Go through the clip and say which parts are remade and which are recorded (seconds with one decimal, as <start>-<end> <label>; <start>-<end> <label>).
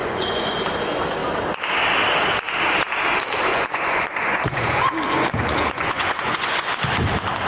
0.0-0.7 remade; 0.7-3.5 recorded; 3.5-6.7 remade; 6.7-7.5 recorded